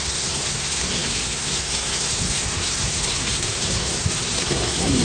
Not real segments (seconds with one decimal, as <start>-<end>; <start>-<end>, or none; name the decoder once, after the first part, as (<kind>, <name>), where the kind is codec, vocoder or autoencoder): 0.0-5.0 (codec, SNAC)